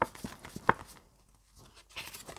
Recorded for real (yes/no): yes